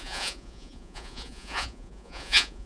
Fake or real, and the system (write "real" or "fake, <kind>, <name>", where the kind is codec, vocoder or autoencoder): fake, vocoder, Vocos